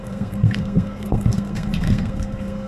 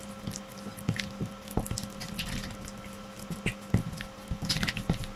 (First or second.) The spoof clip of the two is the first